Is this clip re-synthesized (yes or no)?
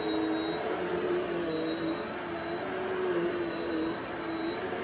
no